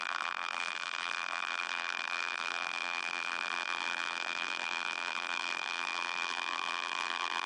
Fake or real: fake